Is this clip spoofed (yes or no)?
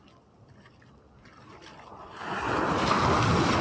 no